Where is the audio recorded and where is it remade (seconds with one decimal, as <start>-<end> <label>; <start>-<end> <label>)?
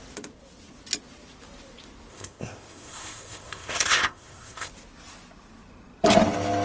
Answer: 0.0-2.1 recorded; 2.1-4.7 remade; 4.7-6.6 recorded